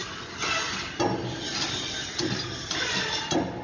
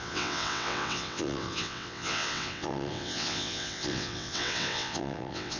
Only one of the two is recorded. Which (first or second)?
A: first